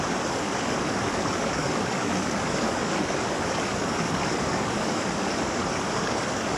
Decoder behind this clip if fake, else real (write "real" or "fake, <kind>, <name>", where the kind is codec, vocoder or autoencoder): fake, codec, DAC